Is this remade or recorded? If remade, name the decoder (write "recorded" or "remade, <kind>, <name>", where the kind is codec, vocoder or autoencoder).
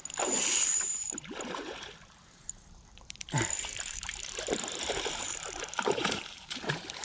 remade, vocoder, BigVGAN v2